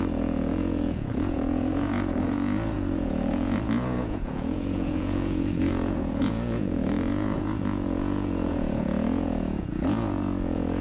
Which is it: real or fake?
fake